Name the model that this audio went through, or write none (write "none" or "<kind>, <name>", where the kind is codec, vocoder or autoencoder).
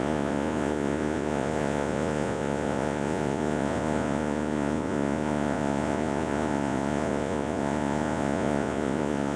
vocoder, Vocos